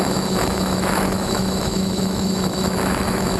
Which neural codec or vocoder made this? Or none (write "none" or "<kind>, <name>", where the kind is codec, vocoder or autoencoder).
autoencoder, DAC-VAE